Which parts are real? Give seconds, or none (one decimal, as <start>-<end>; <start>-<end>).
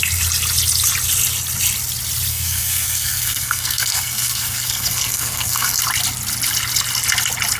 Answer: 0.0-2.3; 5.8-7.6